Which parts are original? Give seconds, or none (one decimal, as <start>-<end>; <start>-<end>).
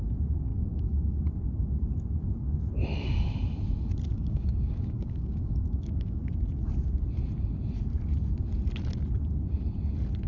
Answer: 0.0-0.5; 1.2-4.1; 6.2-10.3